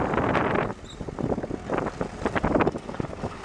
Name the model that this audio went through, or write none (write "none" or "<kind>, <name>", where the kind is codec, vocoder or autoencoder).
none